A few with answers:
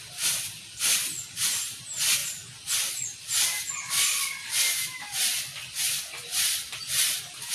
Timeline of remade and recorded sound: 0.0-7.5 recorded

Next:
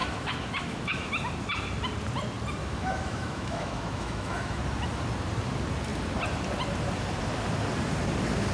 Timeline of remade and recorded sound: 0.0-1.1 remade; 1.1-2.6 recorded; 2.6-4.6 remade; 4.6-8.5 recorded

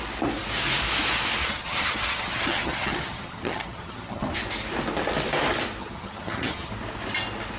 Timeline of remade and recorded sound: 0.0-1.4 recorded; 1.4-4.3 remade; 4.3-5.8 recorded; 5.8-6.7 remade; 6.7-7.6 recorded

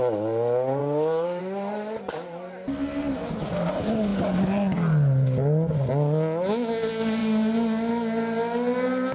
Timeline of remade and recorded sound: 0.0-0.8 recorded; 0.8-1.4 remade; 1.4-9.1 recorded

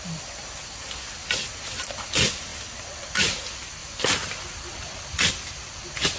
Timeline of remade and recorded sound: 0.0-6.2 recorded

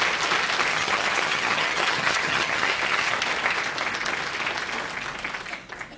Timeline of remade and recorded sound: 0.0-0.7 recorded; 0.7-3.1 remade; 3.1-6.0 recorded